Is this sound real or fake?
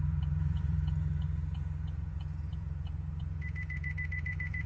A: fake